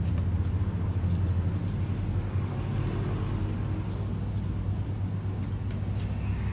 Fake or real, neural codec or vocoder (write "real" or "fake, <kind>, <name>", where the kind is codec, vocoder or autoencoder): real